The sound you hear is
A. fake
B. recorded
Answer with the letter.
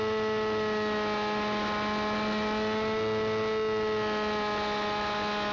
B